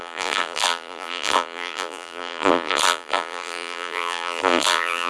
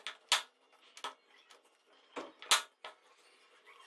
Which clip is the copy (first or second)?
first